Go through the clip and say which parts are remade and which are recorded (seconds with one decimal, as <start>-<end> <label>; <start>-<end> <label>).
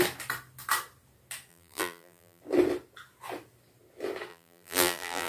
0.0-1.5 recorded; 1.5-2.4 remade; 2.4-4.3 recorded; 4.3-5.3 remade